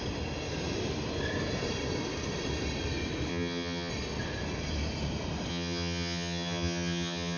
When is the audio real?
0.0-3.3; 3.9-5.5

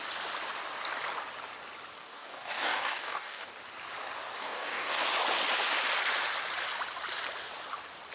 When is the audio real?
0.0-2.0; 3.5-4.4; 5.0-8.1

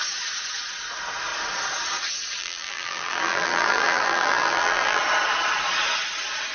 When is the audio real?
0.0-2.4; 5.0-6.5

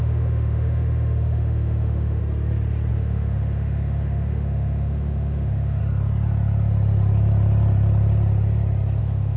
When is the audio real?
2.2-2.9; 5.8-9.0

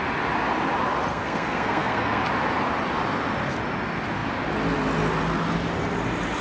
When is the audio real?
0.0-1.1; 2.2-6.4

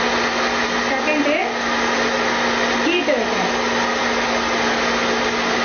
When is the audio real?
0.0-5.6